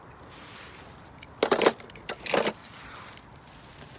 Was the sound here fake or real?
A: real